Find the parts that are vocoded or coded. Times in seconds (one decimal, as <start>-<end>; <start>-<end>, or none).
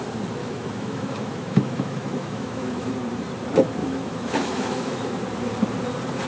0.4-2.9; 3.8-5.2